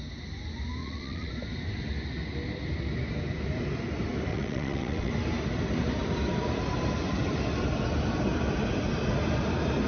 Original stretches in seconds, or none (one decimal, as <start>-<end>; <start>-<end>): 0.0-0.8; 1.3-4.3; 5.1-9.9